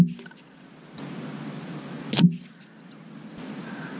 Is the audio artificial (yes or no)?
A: no